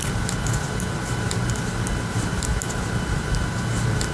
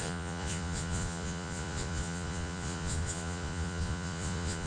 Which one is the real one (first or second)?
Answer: first